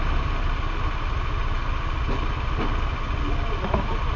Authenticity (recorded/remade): recorded